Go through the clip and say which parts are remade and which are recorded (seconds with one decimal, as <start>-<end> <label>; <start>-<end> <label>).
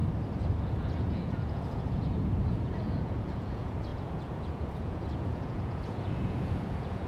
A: 0.0-0.6 recorded; 0.6-7.1 remade